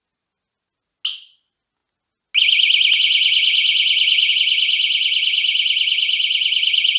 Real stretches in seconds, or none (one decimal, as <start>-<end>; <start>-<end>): 0.0-7.0